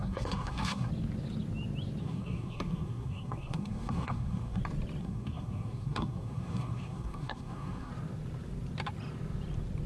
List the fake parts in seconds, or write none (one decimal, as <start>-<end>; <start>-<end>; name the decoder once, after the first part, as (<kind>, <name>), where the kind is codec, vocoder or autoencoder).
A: 0.0-0.9 (codec, SNAC); 2.0-4.6; 5.0-7.9